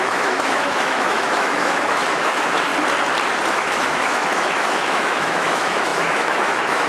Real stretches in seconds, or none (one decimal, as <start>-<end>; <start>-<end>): 2.7-3.5